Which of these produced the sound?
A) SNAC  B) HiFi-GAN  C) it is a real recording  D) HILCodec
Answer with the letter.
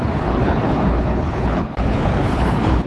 D